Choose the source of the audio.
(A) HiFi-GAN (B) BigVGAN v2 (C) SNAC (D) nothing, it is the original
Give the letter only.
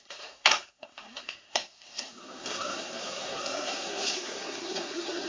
C